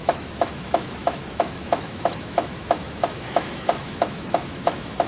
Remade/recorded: remade